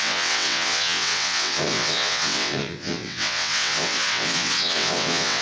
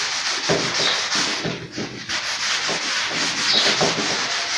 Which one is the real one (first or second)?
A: second